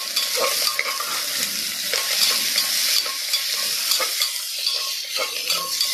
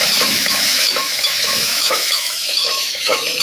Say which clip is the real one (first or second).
first